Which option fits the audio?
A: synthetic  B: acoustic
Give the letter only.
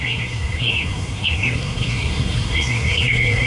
A